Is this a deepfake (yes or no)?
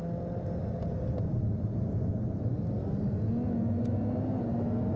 no